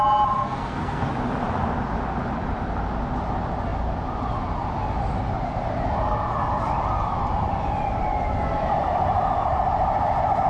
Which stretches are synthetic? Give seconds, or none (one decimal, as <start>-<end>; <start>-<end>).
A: 0.4-1.1